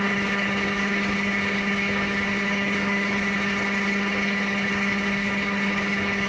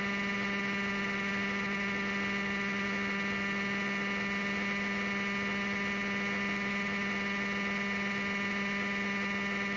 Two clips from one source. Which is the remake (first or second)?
first